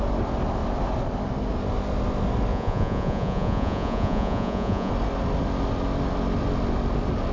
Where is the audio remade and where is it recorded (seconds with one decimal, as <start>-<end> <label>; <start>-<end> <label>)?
0.0-2.5 recorded; 2.5-4.9 remade; 4.9-7.3 recorded